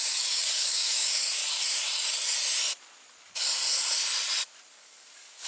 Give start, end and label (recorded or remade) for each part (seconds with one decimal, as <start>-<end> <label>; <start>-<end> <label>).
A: 0.0-1.4 remade; 1.4-4.7 recorded; 4.7-5.5 remade